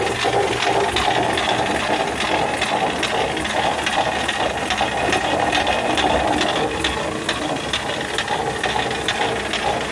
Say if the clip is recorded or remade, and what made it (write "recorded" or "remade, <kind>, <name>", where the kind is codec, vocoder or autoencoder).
recorded